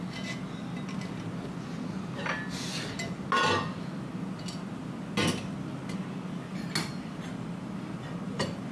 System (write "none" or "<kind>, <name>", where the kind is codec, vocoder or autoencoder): none